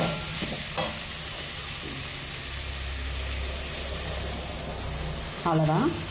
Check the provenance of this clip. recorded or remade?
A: recorded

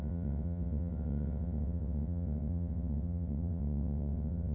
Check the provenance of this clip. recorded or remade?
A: remade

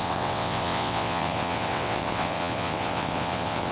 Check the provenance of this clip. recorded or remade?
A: remade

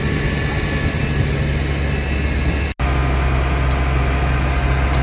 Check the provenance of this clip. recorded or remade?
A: recorded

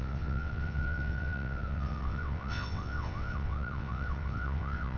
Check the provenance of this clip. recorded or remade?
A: remade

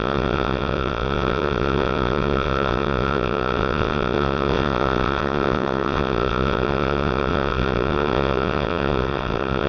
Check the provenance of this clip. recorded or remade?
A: remade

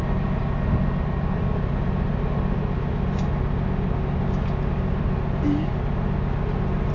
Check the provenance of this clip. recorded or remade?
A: recorded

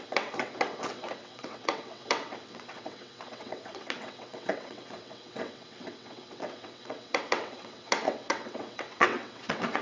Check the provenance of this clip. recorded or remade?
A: remade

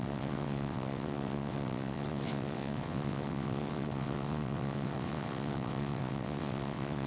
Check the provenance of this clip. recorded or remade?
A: remade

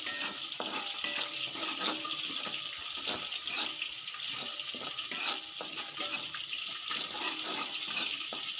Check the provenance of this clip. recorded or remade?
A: recorded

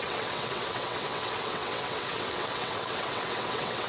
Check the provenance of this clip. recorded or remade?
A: remade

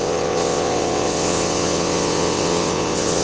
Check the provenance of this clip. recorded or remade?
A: remade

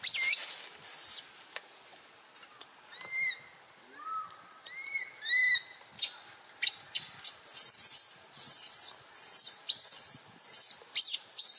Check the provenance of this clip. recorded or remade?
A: recorded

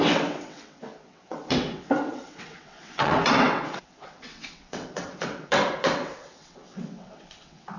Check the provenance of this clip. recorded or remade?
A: remade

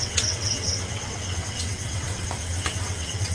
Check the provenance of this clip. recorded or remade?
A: remade